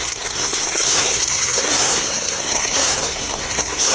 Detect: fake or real fake